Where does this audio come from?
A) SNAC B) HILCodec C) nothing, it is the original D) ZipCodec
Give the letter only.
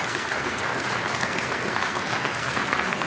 A